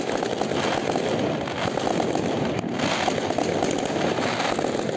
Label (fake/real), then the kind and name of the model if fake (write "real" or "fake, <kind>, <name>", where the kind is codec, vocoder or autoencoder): real